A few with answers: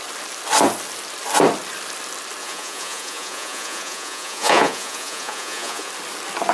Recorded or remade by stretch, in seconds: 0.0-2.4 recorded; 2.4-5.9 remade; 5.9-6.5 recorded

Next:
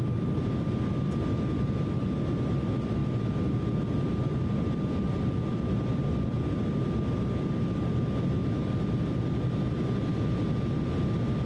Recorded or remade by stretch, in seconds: 0.0-11.5 recorded

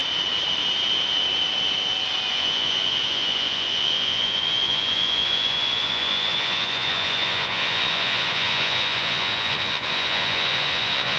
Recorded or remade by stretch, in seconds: 0.0-2.3 recorded; 2.3-11.2 remade

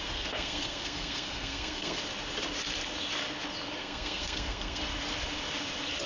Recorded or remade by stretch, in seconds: 0.0-2.0 remade; 2.0-3.8 recorded; 3.8-4.8 remade; 4.8-6.1 recorded

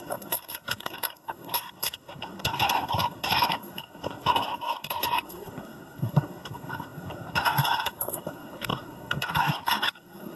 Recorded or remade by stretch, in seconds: 0.0-10.4 remade

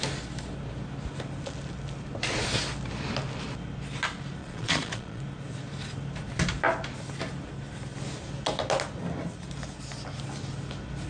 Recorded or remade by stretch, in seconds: 0.0-4.4 recorded; 4.4-5.2 remade; 5.2-11.1 recorded

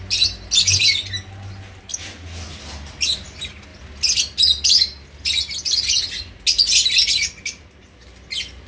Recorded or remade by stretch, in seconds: 0.0-8.7 recorded

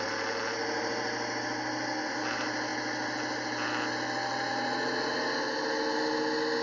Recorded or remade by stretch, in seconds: 0.0-6.6 recorded